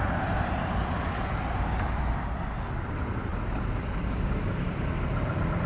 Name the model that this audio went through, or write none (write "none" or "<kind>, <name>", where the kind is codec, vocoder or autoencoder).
none